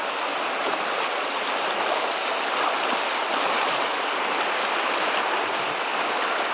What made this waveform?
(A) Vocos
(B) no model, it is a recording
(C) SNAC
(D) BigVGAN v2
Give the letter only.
B